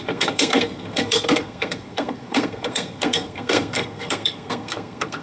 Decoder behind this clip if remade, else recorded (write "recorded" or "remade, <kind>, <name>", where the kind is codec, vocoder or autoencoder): remade, codec, SNAC